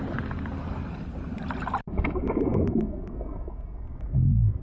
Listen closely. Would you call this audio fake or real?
real